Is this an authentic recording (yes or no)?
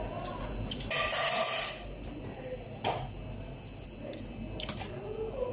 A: yes